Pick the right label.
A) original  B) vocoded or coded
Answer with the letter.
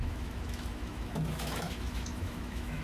B